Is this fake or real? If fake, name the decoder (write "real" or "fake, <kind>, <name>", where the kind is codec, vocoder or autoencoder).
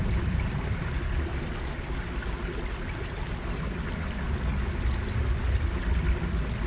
real